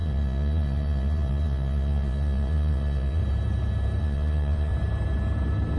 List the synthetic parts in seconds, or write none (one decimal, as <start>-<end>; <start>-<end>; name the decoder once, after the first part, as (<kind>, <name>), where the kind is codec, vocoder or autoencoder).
0.0-3.2 (vocoder, Vocos); 4.0-4.7